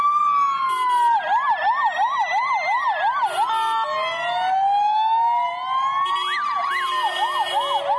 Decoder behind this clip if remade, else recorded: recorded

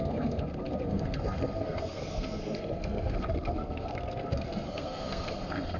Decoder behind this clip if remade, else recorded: remade, codec, SNAC